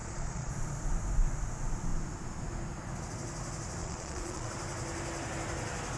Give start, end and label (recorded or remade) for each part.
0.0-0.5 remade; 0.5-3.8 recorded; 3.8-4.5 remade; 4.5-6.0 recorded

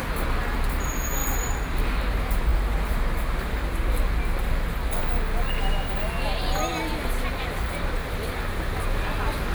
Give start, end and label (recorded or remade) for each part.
0.0-1.2 recorded; 1.2-1.8 remade; 1.8-9.5 recorded

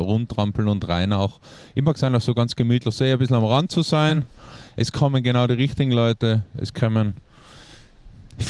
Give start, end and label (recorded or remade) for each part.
0.0-4.1 recorded; 4.1-4.7 remade; 4.7-8.5 recorded